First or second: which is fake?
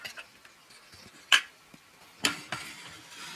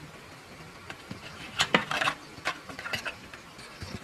second